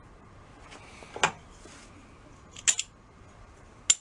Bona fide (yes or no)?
yes